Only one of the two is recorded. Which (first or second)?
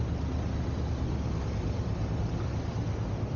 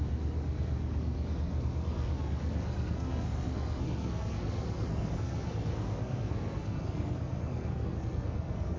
first